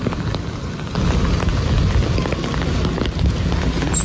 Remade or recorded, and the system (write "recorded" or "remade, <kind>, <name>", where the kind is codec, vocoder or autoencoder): recorded